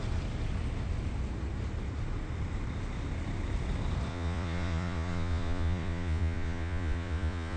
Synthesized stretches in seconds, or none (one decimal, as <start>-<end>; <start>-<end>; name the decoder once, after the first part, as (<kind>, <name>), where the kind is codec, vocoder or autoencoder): 4.1-7.6 (vocoder, Vocos)